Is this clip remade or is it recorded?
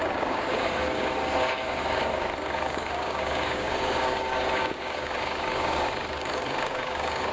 remade